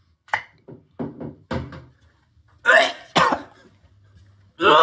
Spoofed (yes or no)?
no